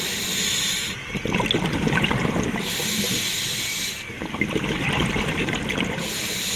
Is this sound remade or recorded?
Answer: recorded